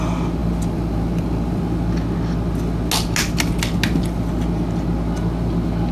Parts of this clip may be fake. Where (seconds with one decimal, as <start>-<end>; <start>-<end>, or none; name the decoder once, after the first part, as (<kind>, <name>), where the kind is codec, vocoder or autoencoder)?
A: 0.4-1.6 (vocoder, BigVGAN v2)